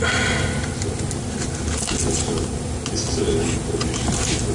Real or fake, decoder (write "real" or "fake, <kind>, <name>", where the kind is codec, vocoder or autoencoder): real